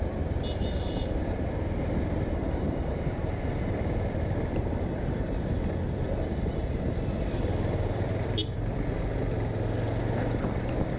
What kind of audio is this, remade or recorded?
remade